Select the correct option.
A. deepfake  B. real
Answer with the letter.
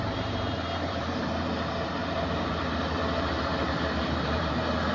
A